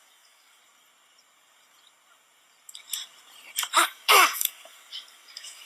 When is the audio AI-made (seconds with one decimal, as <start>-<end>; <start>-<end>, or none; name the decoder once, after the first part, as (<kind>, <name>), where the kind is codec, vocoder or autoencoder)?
0.0-0.6 (codec, DAC); 3.7-5.7